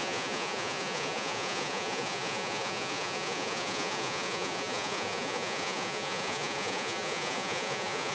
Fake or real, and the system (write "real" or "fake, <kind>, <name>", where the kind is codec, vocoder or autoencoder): fake, vocoder, Vocos